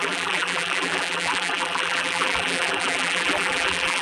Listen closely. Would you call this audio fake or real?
fake